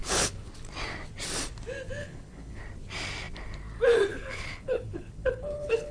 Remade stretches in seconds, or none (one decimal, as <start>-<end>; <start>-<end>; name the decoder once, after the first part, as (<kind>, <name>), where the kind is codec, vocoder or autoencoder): 0.0-0.5 (codec, HILCodec); 2.0-2.6; 4.1-5.9